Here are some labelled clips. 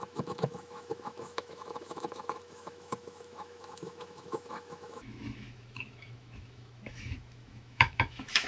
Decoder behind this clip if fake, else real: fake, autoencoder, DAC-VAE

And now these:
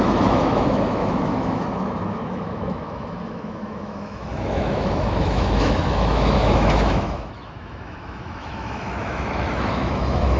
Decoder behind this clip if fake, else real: fake, autoencoder, DAC-VAE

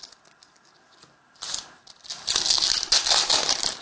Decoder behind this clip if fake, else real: real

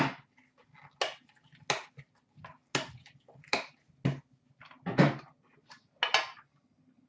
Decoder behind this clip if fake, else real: real